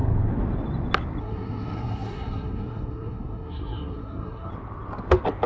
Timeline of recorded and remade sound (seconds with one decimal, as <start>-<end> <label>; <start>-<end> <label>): 0.0-1.2 recorded; 1.2-4.5 remade; 4.5-5.5 recorded